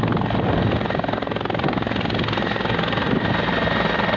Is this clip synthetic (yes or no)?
no